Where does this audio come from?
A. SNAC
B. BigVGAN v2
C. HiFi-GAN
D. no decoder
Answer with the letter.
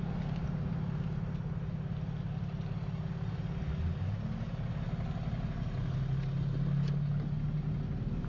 D